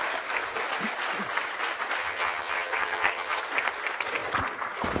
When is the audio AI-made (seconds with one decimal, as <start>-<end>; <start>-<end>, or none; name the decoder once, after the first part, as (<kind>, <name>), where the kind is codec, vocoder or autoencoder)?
2.0-3.4 (vocoder, HiFi-GAN)